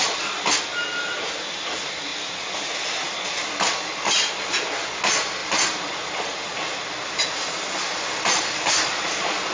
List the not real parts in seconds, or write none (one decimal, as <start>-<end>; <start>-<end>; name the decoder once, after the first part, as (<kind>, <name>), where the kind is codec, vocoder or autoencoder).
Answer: none